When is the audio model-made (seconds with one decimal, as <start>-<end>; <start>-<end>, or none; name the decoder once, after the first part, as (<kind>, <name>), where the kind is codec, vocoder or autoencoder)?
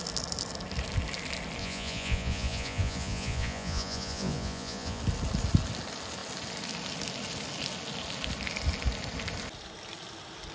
1.6-5.0 (vocoder, Vocos)